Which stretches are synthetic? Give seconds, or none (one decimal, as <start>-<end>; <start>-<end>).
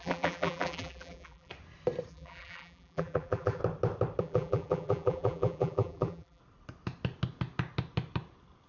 0.0-1.5; 2.1-3.6; 4.2-6.4